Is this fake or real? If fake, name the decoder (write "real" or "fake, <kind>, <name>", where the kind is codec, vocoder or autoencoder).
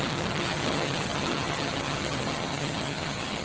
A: fake, vocoder, HiFi-GAN